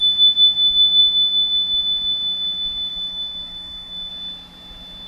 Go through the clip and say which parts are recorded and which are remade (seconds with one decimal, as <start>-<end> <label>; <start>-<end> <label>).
0.0-2.9 recorded; 2.9-4.1 remade; 4.1-5.1 recorded